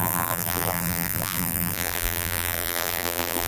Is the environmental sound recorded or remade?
remade